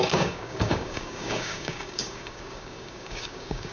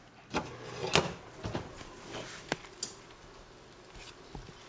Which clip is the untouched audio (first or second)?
second